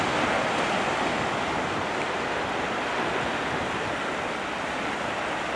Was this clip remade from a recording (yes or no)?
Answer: no